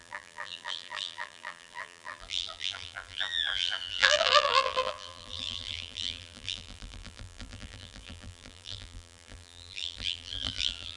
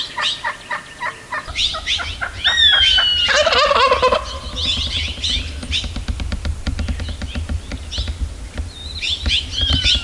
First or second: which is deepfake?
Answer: first